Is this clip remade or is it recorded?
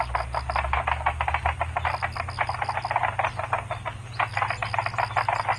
recorded